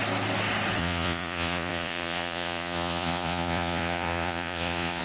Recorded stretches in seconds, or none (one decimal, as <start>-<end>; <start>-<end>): 0.0-0.8